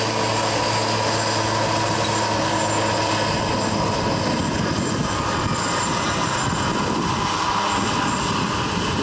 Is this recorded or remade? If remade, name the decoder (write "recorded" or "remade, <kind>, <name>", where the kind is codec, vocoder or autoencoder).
recorded